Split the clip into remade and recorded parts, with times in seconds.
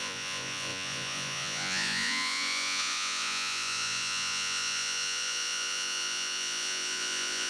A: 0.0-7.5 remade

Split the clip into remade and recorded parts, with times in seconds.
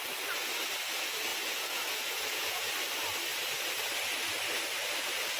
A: 0.0-1.3 recorded; 1.3-2.7 remade; 2.7-5.4 recorded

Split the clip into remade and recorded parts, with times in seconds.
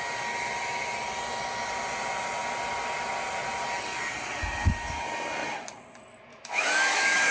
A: 0.0-6.3 recorded; 6.3-7.3 remade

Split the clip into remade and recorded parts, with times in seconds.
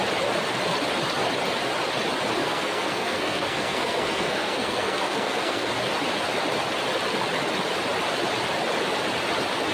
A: 0.0-2.4 recorded; 2.4-5.7 remade; 5.7-9.7 recorded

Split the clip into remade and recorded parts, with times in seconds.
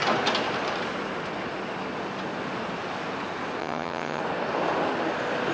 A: 0.0-3.6 recorded; 3.6-4.2 remade; 4.2-5.5 recorded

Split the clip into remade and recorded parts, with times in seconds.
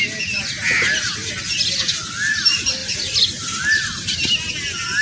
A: 0.0-5.0 recorded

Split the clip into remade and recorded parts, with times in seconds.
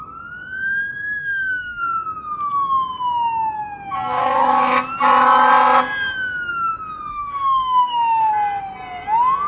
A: 0.0-1.2 recorded; 1.2-1.8 remade; 1.8-7.1 recorded; 7.1-8.3 remade; 8.3-9.5 recorded